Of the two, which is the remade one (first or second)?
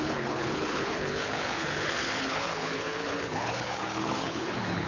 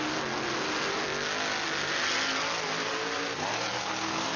first